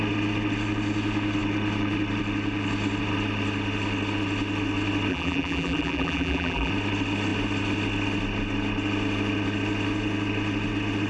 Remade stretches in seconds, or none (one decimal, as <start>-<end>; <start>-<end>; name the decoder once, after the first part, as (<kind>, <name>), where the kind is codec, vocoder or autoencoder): 5.1-6.7 (vocoder, BigVGAN v2)